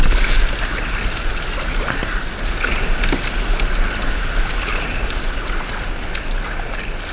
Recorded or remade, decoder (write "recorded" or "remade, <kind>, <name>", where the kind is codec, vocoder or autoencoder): recorded